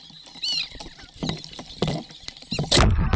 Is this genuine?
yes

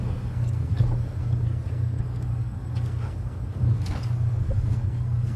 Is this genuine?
no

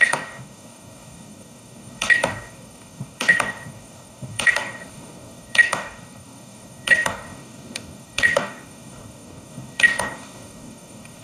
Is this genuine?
no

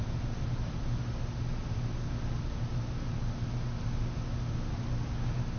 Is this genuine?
yes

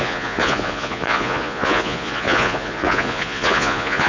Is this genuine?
no